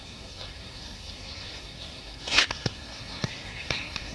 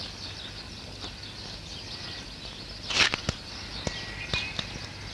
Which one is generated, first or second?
first